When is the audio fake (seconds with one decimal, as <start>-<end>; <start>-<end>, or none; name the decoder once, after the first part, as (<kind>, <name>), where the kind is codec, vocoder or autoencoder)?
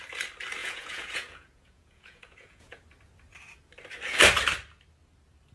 0.6-2.8 (vocoder, Vocos)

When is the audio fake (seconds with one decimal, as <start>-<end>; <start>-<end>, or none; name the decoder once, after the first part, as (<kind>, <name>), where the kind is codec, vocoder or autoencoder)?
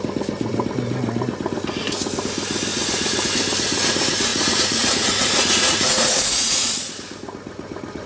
2.7-3.3 (vocoder, Vocos); 4.3-6.9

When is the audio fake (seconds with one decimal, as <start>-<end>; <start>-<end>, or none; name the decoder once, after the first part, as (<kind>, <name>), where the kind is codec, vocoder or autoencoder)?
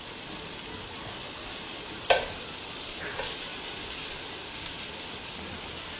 none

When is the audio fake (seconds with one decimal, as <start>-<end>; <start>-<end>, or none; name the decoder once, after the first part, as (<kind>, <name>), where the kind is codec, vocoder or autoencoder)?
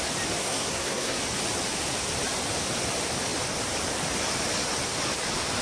0.4-1.2 (codec, SNAC)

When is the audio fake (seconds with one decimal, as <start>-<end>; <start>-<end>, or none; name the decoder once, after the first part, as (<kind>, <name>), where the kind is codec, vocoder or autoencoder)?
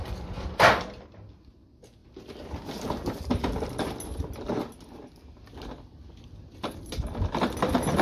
none